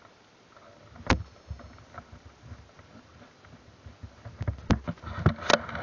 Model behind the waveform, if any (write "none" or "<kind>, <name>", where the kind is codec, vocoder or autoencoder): none